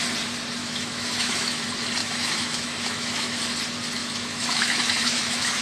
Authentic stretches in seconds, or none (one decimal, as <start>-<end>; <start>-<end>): 0.0-0.6; 1.6-2.0; 3.4-4.0